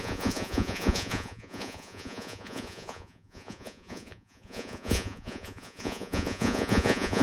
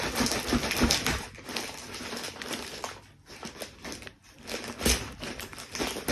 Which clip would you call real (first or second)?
second